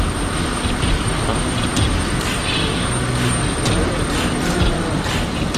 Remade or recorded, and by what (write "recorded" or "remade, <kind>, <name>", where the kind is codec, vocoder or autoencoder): recorded